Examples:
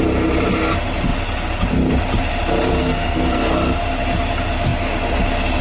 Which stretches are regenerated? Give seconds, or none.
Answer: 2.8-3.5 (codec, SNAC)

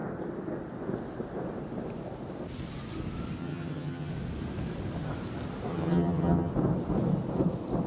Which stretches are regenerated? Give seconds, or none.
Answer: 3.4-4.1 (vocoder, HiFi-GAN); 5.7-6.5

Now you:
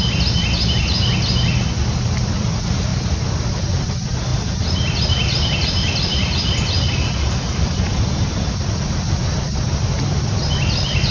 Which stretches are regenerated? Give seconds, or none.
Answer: 2.9-3.5 (vocoder, BigVGAN v2); 4.3-7.6

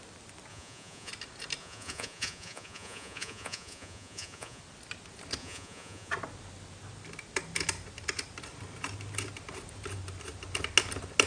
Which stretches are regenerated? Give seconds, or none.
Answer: 0.5-1.1 (vocoder, Vocos); 1.6-4.6; 5.4-6.1

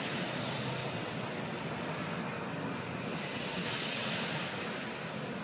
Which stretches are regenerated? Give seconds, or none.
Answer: 0.8-1.7 (vocoder, WaveNeXt); 3.3-4.1

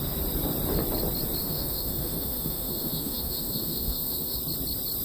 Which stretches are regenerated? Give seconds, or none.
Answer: 1.4-4.4 (autoencoder, DAC-VAE)